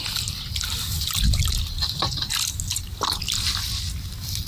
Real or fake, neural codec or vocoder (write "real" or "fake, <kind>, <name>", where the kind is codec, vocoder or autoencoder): real